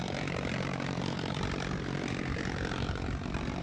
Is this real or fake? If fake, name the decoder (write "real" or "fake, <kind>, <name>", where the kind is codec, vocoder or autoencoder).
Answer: fake, vocoder, BigVGAN v2